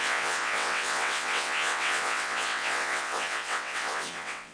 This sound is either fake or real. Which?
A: fake